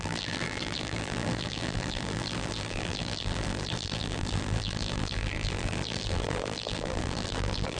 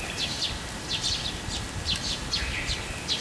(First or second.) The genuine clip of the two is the second